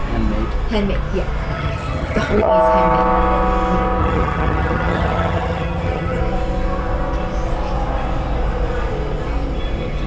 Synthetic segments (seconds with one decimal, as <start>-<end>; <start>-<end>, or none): 1.5-2.5; 4.0-6.2